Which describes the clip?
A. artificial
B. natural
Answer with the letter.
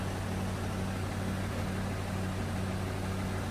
B